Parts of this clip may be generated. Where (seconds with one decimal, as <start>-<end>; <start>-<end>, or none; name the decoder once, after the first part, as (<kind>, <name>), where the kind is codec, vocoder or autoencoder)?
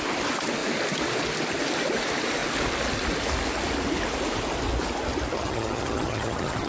5.3-6.7 (vocoder, HiFi-GAN)